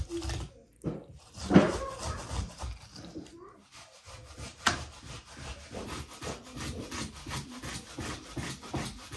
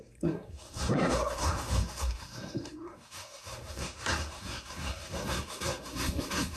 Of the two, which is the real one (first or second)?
first